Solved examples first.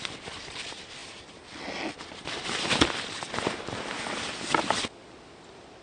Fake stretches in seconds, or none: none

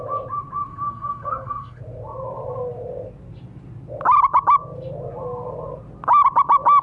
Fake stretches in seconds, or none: 0.7-1.8 (codec, SNAC)

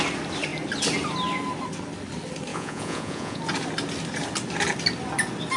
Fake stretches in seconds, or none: 2.5-3.4 (vocoder, Vocos)

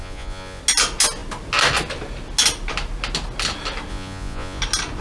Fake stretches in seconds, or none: 0.0-0.6 (vocoder, Vocos); 3.9-4.6

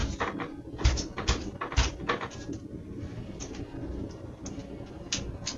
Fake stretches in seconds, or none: none

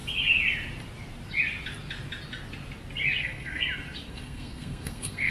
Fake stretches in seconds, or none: 3.2-3.6 (codec, SNAC); 4.1-5.3

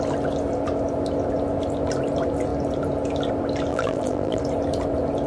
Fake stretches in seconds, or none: 3.7-4.4 (vocoder, BigVGAN v2)

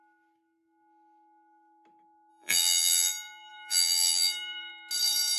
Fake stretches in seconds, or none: 2.3-4.7 (vocoder, BigVGAN v2)